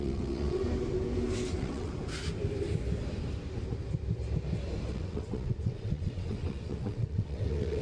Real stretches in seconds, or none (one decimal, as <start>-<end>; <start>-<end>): 0.6-1.5; 1.9-4.9